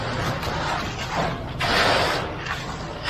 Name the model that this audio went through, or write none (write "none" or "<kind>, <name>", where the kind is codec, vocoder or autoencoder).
none